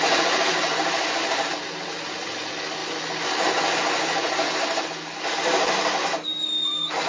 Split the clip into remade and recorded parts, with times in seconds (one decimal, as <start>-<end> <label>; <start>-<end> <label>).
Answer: 0.0-7.1 recorded